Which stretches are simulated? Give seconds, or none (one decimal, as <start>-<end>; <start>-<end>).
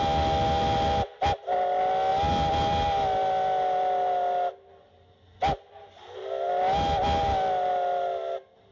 none